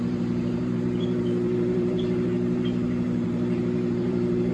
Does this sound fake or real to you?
fake